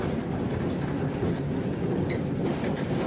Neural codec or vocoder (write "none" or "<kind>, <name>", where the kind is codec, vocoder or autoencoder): none